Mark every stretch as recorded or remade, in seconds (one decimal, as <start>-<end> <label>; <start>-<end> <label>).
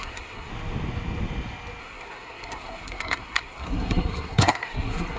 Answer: 0.0-0.5 remade; 0.5-1.8 recorded; 1.8-5.2 remade